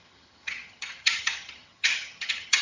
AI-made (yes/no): yes